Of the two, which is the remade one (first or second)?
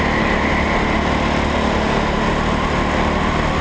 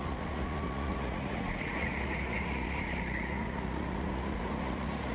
second